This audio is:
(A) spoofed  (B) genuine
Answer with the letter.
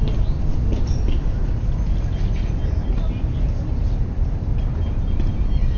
B